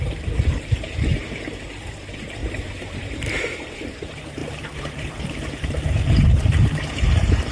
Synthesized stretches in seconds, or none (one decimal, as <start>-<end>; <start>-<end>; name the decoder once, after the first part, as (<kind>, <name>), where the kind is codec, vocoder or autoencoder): 0.0-7.5 (vocoder, BigVGAN v2)